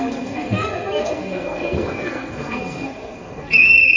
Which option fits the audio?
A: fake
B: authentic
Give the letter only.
A